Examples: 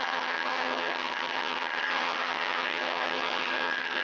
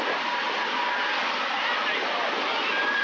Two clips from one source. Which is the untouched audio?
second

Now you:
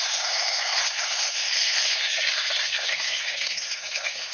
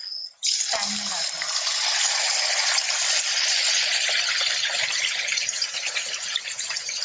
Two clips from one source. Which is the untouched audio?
second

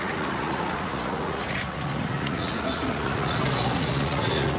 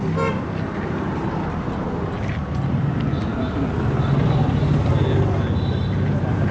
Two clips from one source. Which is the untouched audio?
second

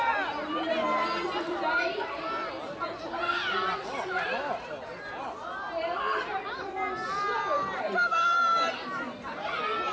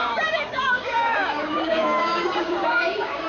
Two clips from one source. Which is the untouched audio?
first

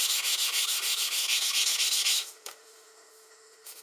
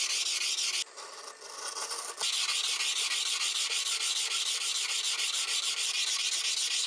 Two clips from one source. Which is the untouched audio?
second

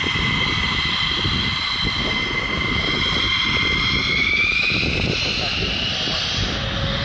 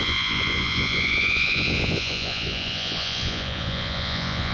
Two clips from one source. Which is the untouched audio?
first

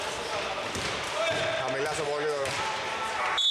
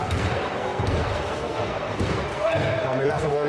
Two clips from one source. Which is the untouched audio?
first